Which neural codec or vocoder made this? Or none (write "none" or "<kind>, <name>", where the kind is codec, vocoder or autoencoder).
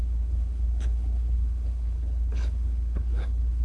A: codec, HILCodec